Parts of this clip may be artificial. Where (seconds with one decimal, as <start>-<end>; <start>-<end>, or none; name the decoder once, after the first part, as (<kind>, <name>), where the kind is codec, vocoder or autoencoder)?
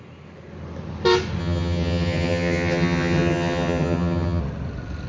1.4-4.4 (vocoder, HiFi-GAN)